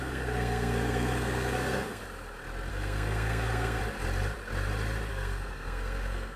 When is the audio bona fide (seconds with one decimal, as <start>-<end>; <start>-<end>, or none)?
2.0-2.7; 3.8-5.1